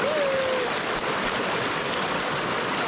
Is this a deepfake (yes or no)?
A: no